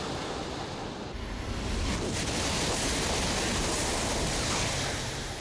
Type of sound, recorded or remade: recorded